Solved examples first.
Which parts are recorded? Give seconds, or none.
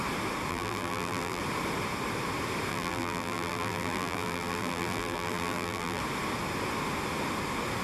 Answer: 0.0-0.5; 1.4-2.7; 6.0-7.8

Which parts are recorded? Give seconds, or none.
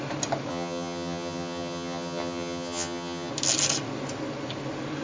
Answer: 0.0-0.5; 3.3-5.0